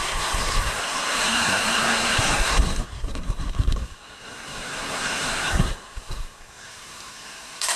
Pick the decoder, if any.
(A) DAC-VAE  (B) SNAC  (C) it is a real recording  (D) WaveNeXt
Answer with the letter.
B